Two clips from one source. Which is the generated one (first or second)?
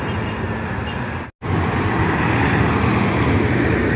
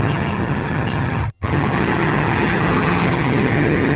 second